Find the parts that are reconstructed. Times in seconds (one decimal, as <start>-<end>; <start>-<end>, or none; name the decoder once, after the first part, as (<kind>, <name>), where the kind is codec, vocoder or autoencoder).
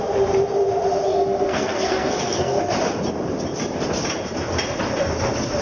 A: 1.1-2.6 (codec, SNAC)